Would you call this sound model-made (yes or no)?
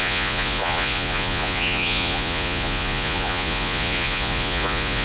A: yes